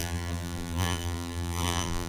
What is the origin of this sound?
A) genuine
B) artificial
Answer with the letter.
B